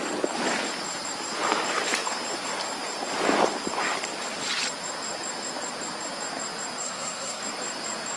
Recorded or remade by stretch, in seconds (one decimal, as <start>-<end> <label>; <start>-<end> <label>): 0.0-6.8 recorded; 6.8-7.4 remade; 7.4-8.2 recorded